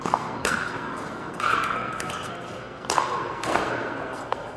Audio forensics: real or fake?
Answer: fake